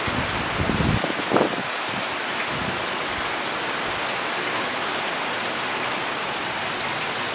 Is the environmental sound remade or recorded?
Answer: recorded